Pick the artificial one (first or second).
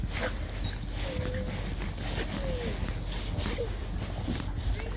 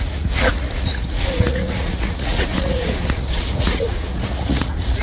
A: second